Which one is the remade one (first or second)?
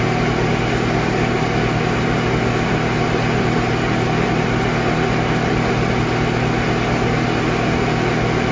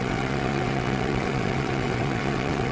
second